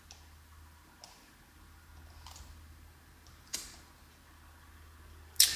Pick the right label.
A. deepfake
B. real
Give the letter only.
B